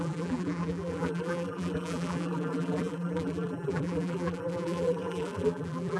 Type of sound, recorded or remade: remade